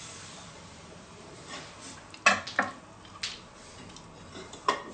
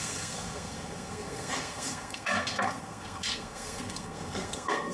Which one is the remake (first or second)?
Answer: second